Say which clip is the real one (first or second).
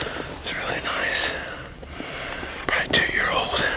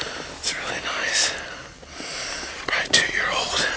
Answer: second